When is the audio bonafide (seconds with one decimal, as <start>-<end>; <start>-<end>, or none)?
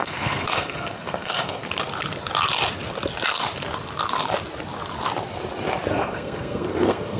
1.6-5.9